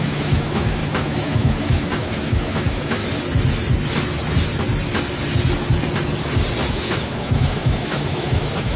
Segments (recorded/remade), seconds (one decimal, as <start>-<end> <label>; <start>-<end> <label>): 0.0-3.0 remade; 3.0-6.7 recorded; 6.7-8.8 remade